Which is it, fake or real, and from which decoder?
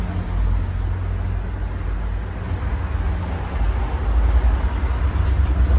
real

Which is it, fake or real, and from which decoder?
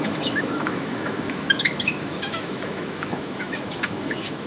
fake, autoencoder, DAC-VAE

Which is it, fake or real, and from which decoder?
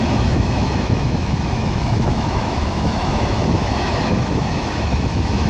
fake, autoencoder, DAC-VAE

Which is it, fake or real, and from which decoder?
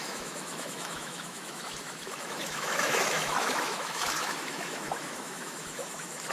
fake, autoencoder, DAC-VAE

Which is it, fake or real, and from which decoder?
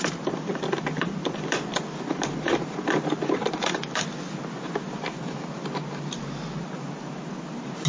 real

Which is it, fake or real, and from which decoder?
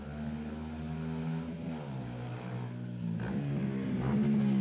real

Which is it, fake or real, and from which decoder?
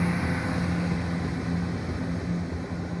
real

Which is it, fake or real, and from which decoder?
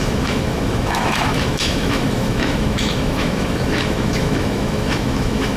fake, autoencoder, DAC-VAE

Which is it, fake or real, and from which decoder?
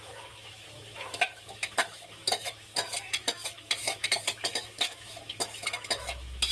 fake, autoencoder, DAC-VAE